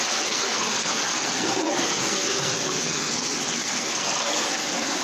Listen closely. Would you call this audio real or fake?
fake